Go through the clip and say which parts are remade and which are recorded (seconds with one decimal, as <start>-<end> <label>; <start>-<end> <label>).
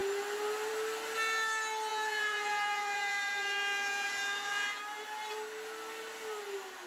0.0-1.9 recorded; 1.9-4.8 remade; 4.8-6.9 recorded